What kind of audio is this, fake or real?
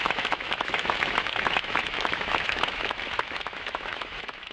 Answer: fake